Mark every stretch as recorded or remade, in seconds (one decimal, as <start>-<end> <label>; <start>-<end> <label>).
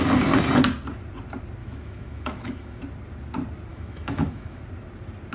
0.0-1.6 recorded; 1.6-2.8 remade; 2.8-3.7 recorded; 3.7-4.6 remade; 4.6-5.3 recorded